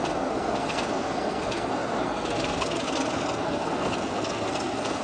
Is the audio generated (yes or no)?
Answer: yes